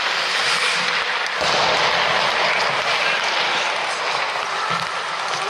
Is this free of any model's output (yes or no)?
yes